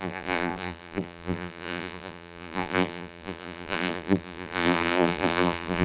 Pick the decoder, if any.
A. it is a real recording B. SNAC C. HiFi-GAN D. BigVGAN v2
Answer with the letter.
D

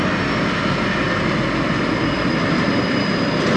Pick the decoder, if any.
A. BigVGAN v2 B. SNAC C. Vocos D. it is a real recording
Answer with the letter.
D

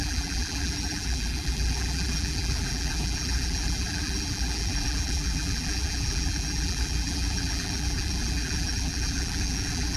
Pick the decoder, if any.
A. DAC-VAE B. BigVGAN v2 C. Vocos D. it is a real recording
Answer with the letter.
B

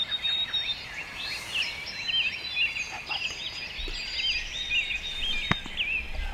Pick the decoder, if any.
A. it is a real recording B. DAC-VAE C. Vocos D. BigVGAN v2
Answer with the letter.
A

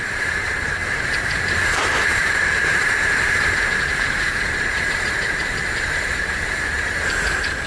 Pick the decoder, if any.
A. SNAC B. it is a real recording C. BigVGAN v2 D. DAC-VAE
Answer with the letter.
C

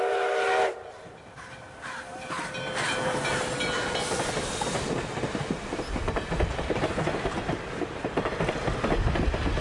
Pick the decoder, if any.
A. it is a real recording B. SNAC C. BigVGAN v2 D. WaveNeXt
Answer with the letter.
A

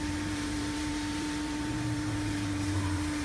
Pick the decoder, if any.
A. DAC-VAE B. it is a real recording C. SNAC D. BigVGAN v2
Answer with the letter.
D